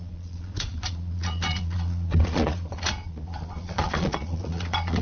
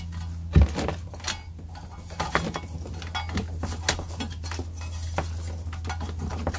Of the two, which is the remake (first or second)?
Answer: first